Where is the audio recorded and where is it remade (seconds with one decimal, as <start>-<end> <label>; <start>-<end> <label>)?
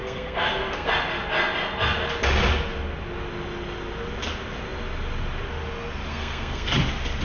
0.0-0.9 remade; 0.9-6.1 recorded; 6.1-6.7 remade; 6.7-7.2 recorded